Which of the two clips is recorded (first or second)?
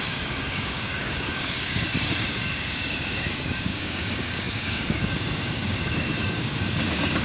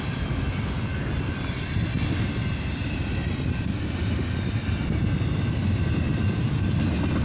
second